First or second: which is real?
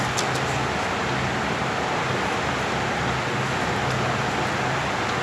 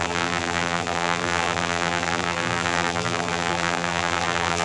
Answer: first